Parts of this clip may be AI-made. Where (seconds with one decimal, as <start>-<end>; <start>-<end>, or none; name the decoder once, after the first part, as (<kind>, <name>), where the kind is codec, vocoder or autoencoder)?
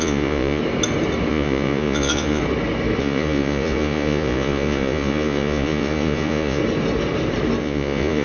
0.0-0.6 (vocoder, Vocos); 1.3-2.4; 3.0-6.6; 7.6-8.2